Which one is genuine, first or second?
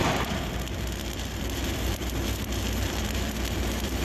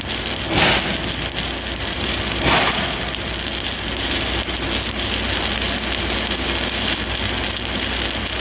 second